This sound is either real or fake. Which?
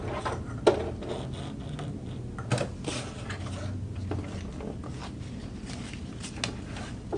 real